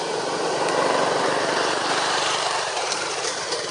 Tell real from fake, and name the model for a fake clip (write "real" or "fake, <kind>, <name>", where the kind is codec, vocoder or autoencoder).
fake, vocoder, BigVGAN v2